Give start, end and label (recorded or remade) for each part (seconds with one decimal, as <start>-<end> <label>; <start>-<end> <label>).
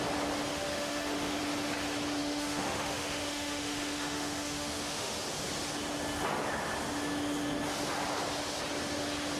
0.0-0.5 recorded; 0.5-1.4 remade; 1.4-2.2 recorded; 2.2-5.1 remade; 5.1-9.4 recorded